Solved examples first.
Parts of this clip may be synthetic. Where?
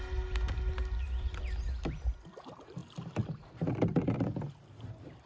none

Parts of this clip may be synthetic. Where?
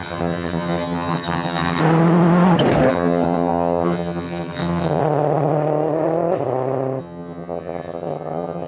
0.0-1.8 (vocoder, HiFi-GAN); 2.9-5.0; 7.0-8.7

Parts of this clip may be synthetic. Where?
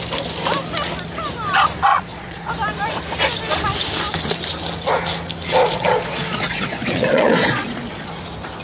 1.9-2.5 (vocoder, Vocos); 5.6-8.1